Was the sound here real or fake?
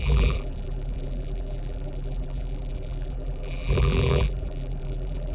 fake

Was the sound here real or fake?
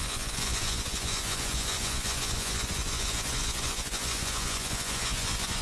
fake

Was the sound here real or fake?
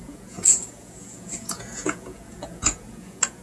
fake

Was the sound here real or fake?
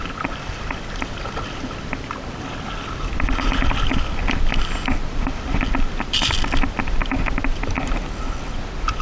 real